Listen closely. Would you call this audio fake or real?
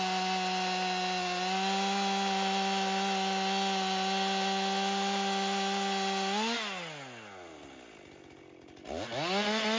real